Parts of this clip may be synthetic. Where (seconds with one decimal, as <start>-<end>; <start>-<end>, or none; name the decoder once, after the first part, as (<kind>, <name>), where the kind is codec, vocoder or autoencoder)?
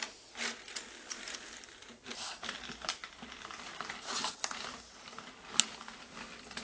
none